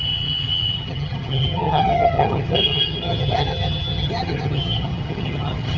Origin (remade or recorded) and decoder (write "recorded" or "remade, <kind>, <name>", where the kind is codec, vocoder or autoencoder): remade, vocoder, HiFi-GAN